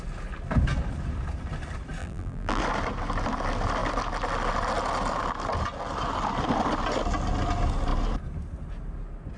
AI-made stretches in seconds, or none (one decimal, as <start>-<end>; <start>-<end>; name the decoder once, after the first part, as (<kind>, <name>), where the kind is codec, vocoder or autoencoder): 2.0-2.6 (vocoder, BigVGAN v2)